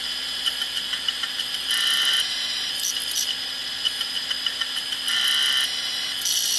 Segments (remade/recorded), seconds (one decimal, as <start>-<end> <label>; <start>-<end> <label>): 0.0-6.6 recorded